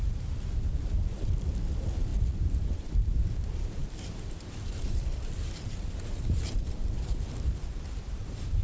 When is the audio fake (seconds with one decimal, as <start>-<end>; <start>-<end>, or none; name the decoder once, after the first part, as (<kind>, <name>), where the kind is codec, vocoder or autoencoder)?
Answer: 0.0-8.6 (vocoder, BigVGAN v2)